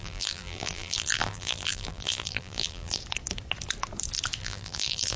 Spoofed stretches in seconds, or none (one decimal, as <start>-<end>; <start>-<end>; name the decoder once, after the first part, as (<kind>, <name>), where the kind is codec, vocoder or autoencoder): 0.0-3.0 (vocoder, BigVGAN v2); 4.4-5.2